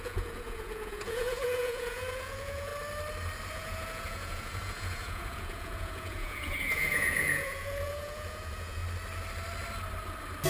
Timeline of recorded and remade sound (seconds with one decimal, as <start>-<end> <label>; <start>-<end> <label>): 0.0-2.7 remade; 2.7-3.5 recorded; 3.5-8.8 remade; 8.8-10.5 recorded